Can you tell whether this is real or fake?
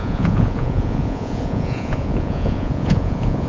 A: fake